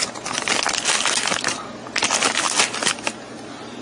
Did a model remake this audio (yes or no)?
no